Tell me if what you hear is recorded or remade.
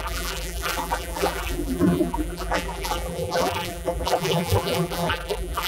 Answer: remade